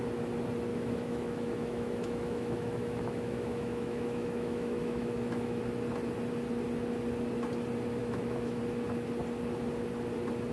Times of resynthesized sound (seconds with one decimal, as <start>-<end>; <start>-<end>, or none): 0.7-5.6; 8.0-8.6